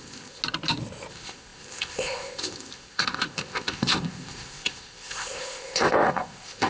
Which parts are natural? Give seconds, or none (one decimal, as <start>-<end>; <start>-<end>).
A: 0.4-1.1